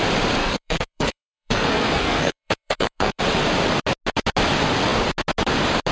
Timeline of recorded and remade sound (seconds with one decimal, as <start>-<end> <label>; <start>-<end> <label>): 0.0-0.4 recorded; 0.4-3.2 remade; 3.2-5.9 recorded